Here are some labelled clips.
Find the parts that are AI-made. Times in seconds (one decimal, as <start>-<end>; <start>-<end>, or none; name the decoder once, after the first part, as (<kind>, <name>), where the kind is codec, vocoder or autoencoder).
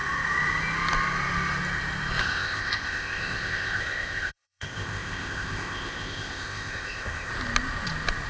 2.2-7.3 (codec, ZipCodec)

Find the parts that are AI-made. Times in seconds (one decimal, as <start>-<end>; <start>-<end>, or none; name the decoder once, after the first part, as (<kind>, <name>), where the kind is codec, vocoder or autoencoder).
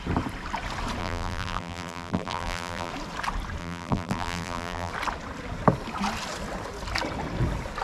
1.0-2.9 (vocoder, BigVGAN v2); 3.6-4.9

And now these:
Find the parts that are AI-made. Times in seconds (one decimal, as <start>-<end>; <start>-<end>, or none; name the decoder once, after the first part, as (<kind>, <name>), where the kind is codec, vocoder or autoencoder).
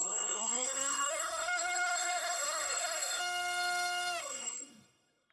0.0-3.2 (codec, SNAC); 4.2-5.3